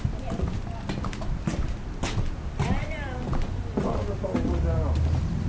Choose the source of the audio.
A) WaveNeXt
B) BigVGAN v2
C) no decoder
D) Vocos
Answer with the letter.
C